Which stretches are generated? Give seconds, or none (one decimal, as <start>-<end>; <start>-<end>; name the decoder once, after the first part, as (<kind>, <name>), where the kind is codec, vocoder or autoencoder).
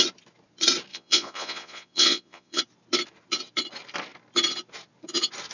0.9-2.6 (vocoder, Vocos)